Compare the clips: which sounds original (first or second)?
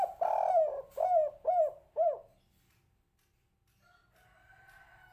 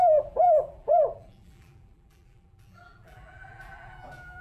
first